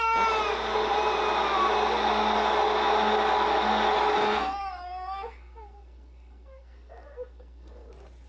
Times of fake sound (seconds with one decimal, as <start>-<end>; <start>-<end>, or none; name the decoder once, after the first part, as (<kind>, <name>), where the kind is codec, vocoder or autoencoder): 4.2-7.9 (codec, SNAC)